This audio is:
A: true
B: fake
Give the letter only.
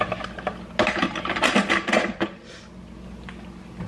A